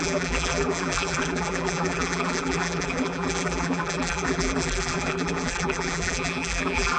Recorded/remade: remade